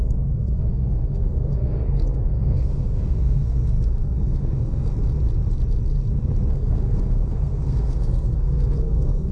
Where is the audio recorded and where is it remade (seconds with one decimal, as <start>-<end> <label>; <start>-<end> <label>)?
0.0-4.9 remade; 4.9-6.5 recorded; 6.5-9.3 remade